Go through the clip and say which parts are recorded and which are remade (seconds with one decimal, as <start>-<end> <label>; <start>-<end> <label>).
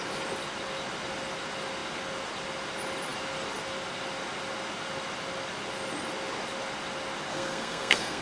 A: 0.0-7.3 recorded; 7.3-8.2 remade